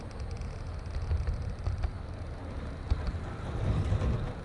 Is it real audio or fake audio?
real